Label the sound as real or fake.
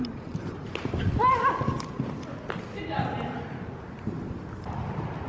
real